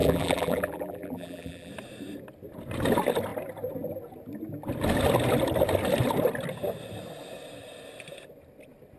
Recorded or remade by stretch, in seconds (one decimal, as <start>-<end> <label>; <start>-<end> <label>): 0.0-1.7 remade; 1.7-9.0 recorded